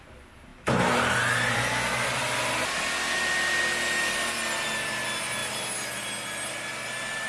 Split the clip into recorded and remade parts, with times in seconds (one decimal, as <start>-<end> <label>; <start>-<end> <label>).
0.0-7.3 recorded